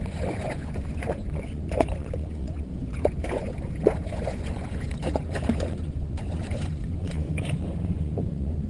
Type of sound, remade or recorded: remade